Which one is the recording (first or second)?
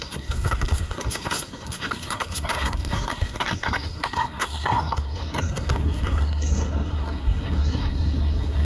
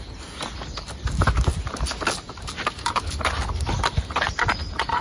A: second